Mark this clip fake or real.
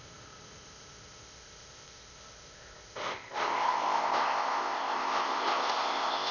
fake